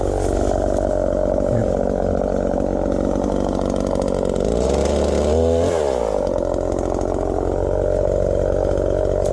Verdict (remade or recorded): recorded